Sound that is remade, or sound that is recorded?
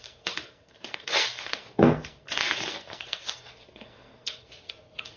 remade